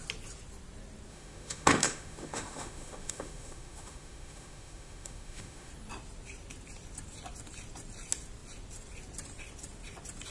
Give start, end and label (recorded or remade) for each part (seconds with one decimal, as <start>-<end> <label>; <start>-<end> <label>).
0.0-1.1 recorded; 1.1-5.7 remade; 5.7-10.3 recorded